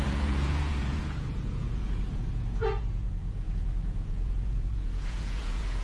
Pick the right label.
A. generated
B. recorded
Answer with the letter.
A